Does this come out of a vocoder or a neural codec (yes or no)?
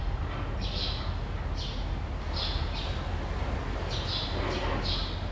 no